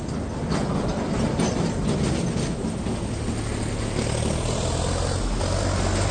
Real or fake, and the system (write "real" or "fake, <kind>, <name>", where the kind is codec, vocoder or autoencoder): real